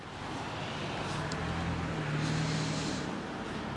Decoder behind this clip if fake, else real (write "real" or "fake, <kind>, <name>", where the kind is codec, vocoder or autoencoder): real